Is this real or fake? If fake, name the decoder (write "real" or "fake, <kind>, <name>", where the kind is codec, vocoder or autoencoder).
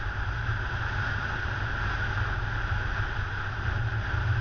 real